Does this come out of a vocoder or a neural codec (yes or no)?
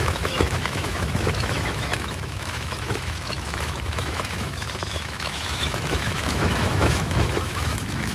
yes